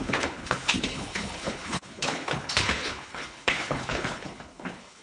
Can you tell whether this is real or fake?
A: fake